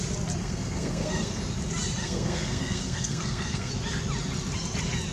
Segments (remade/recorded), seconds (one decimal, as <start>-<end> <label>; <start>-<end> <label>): 0.0-0.4 recorded; 0.4-1.4 remade; 1.4-2.0 recorded; 2.0-3.7 remade; 3.7-5.1 recorded